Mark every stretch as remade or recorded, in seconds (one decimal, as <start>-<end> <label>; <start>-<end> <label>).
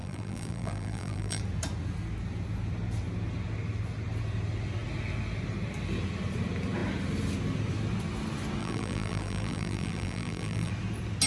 0.0-1.4 remade; 1.4-8.6 recorded; 8.6-10.7 remade; 10.7-11.3 recorded